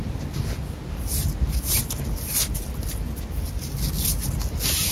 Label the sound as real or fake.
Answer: real